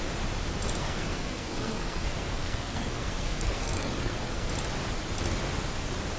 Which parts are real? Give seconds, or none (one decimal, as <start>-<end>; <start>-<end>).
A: 0.0-0.8; 4.5-6.2